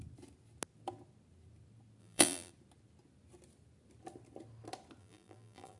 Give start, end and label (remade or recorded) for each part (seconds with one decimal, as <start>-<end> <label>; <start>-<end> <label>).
0.0-2.0 recorded; 2.0-2.5 remade; 2.5-5.0 recorded; 5.0-5.8 remade